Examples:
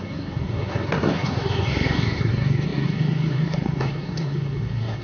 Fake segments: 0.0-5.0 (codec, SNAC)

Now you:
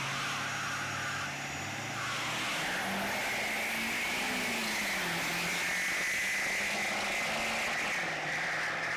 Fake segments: none

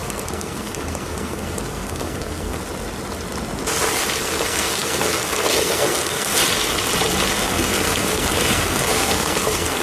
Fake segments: 0.0-2.6 (codec, SNAC); 4.2-6.4; 7.3-9.8

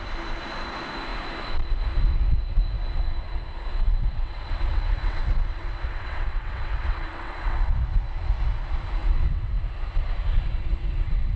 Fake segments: 3.7-7.7 (vocoder, WaveNeXt); 9.0-9.6; 10.7-11.4

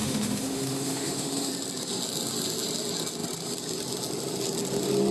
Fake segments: 0.0-1.5 (autoencoder, DAC-VAE)

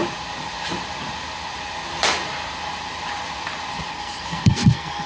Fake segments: 3.9-5.1 (codec, SNAC)

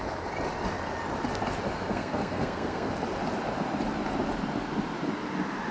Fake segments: 1.9-2.9 (codec, SNAC)